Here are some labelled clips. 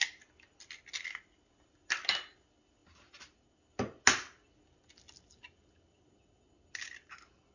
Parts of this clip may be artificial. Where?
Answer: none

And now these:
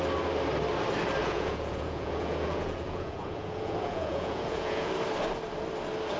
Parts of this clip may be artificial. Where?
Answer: 1.2-4.9 (vocoder, Vocos)

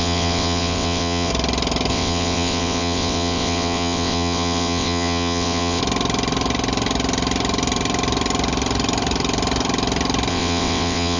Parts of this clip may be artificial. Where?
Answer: 0.0-1.3 (vocoder, WaveNeXt); 1.9-5.8; 10.3-11.2

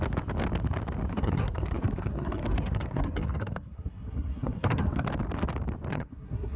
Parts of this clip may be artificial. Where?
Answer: 1.1-5.1 (codec, SNAC); 5.9-6.6

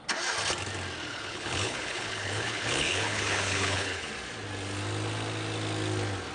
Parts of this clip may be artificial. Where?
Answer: 1.1-4.1 (codec, HILCodec)

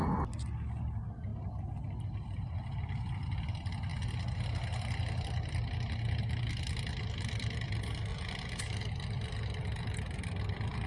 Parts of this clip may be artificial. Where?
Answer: 0.8-1.3 (vocoder, BigVGAN v2); 2.0-3.9; 6.2-10.9